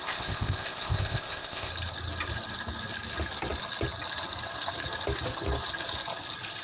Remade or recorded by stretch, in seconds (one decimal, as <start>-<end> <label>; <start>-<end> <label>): 0.0-1.7 remade; 1.7-6.6 recorded